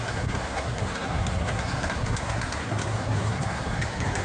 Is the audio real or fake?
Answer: fake